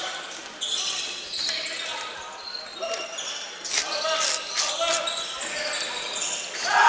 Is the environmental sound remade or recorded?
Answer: recorded